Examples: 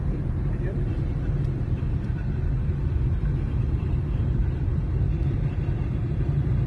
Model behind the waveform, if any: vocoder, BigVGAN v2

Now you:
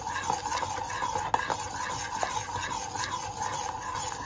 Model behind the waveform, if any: none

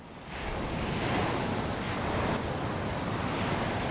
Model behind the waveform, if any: none